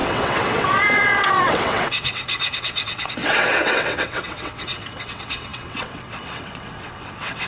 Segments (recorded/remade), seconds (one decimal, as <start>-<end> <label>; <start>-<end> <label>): 0.0-7.5 remade